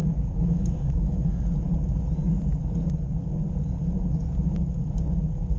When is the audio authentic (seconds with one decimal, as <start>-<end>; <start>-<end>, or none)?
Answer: 1.2-5.6